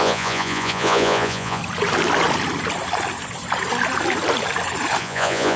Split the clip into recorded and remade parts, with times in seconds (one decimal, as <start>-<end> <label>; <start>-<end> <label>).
0.0-1.6 remade; 1.6-5.0 recorded; 5.0-5.6 remade